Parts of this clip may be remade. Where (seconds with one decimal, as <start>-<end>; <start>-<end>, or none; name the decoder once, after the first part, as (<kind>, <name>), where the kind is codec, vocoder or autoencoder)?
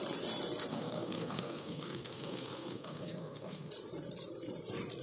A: 0.7-3.7 (codec, SNAC)